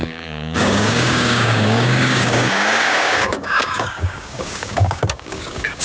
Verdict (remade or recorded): remade